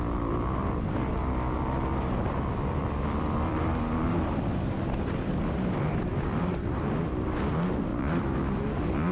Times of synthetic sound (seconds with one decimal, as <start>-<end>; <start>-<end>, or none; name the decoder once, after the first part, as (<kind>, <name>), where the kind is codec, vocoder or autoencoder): 2.8-6.7 (vocoder, BigVGAN v2); 7.9-8.5

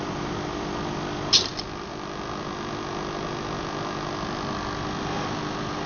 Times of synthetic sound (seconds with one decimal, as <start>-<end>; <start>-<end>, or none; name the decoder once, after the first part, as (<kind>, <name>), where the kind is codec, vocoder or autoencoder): none